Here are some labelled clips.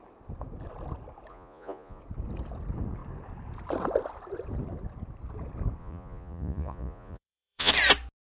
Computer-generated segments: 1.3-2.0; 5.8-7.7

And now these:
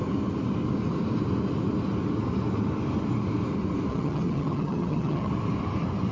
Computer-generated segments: 3.9-5.3

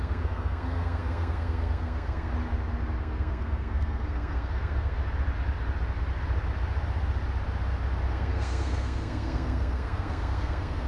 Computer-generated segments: 0.0-2.3; 3.0-5.0; 8.1-10.9

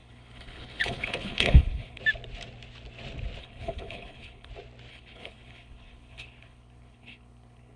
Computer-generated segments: 0.0-2.0; 3.4-4.5; 4.9-7.8

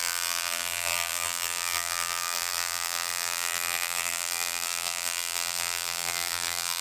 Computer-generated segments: 0.0-6.8

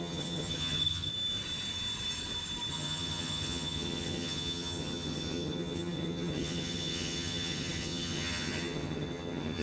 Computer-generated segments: 0.0-1.1; 2.7-9.6

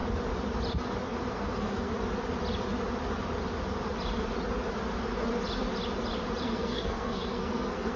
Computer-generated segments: 1.3-1.9; 6.4-8.0